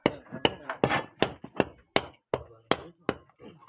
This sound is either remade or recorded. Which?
recorded